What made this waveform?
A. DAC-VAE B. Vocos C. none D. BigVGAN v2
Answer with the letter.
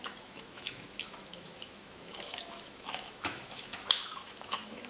A